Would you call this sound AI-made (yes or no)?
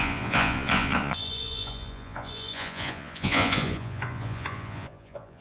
yes